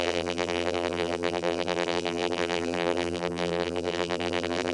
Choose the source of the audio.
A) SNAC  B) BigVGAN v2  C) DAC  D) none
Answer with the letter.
B